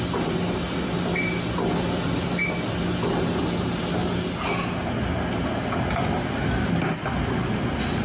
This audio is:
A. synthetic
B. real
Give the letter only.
B